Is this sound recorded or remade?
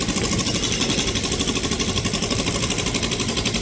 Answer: recorded